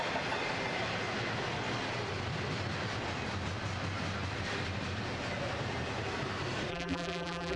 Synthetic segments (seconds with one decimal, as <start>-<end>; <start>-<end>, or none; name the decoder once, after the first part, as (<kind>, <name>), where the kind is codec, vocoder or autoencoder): 6.7-7.6 (vocoder, BigVGAN v2)